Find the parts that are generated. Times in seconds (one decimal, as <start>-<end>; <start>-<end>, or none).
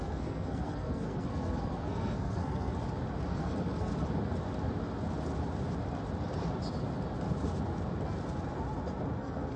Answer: 0.0-2.7; 3.3-3.9; 9.2-9.6